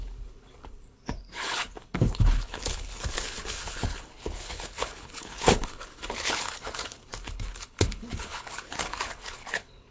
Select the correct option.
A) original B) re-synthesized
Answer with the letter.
B